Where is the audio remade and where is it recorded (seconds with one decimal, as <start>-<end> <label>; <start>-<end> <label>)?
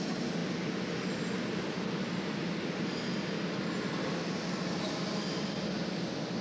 0.0-6.4 recorded